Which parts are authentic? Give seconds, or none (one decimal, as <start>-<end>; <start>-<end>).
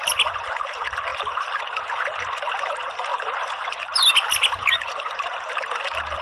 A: 0.0-6.2